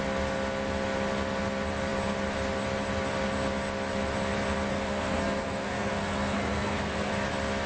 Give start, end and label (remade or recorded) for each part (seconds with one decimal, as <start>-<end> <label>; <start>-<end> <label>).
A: 0.0-4.7 recorded; 4.7-7.1 remade; 7.1-7.7 recorded